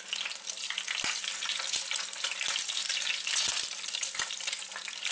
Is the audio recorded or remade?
recorded